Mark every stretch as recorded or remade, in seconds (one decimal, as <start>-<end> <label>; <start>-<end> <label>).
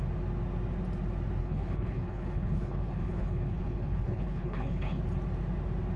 0.0-1.4 recorded; 1.4-5.0 remade; 5.0-6.0 recorded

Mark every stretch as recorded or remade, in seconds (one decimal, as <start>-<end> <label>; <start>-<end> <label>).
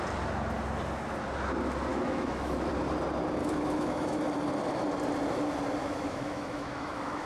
0.0-1.9 recorded; 1.9-2.7 remade; 2.7-3.4 recorded; 3.4-4.2 remade; 4.2-5.8 recorded; 5.8-7.3 remade